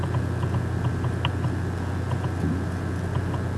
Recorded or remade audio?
recorded